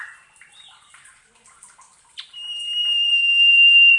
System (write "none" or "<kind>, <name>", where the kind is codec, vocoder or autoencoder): vocoder, BigVGAN v2